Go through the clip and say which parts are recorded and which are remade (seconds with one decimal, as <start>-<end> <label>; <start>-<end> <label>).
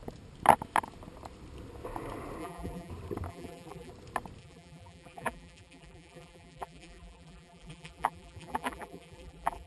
0.0-2.4 recorded; 2.4-2.9 remade; 2.9-3.3 recorded; 3.3-3.9 remade; 3.9-4.4 recorded; 4.4-9.7 remade